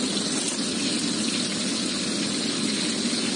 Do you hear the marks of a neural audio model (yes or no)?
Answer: no